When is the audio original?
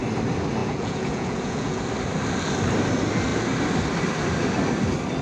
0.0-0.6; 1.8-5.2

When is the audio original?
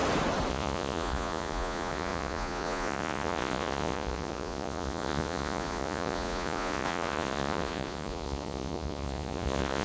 0.0-0.5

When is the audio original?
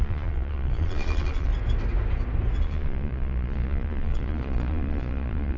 1.5-2.6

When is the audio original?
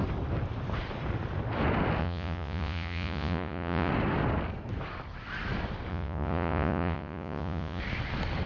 0.0-2.0; 3.9-5.9; 7.8-8.5